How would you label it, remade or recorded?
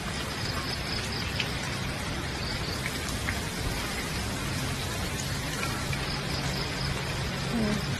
recorded